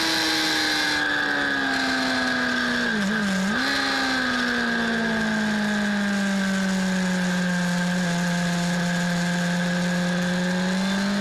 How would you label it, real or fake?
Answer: real